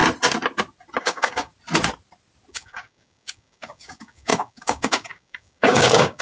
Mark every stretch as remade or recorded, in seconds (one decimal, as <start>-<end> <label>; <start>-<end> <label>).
0.0-1.0 recorded; 1.0-1.5 remade; 1.5-2.5 recorded; 2.5-6.2 remade